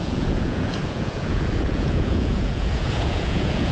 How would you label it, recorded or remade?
remade